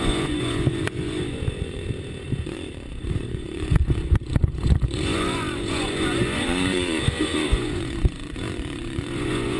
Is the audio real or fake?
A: fake